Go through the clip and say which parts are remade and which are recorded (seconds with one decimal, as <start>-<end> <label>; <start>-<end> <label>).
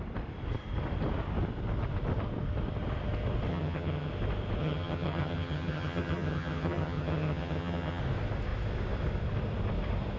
0.0-3.5 recorded; 3.5-4.1 remade; 4.1-4.6 recorded; 4.6-8.0 remade; 8.0-10.2 recorded